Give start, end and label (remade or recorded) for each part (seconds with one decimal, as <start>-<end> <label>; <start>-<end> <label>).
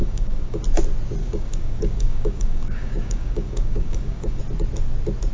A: 0.0-0.6 remade; 0.6-1.2 recorded; 1.2-4.4 remade; 4.4-5.3 recorded